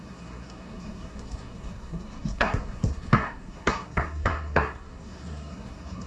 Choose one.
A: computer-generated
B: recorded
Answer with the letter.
A